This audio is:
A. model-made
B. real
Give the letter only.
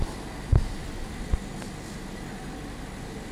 B